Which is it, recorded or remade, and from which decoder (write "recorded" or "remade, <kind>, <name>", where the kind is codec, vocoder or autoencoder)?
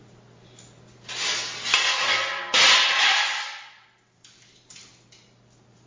recorded